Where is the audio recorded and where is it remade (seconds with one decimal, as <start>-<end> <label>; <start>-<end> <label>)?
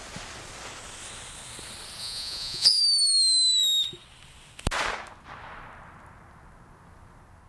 0.0-2.0 recorded; 2.0-2.8 remade; 2.8-7.5 recorded